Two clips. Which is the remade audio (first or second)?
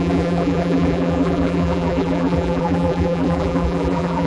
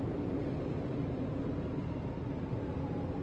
first